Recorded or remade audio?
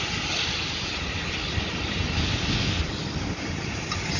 recorded